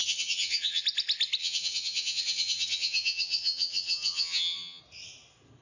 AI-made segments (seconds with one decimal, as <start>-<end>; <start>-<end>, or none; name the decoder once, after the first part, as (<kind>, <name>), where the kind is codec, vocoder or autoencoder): 0.0-0.8 (vocoder, HiFi-GAN); 1.4-4.8